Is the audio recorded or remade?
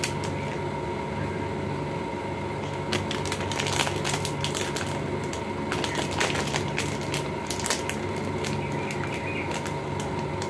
recorded